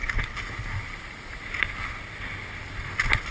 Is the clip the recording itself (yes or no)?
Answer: yes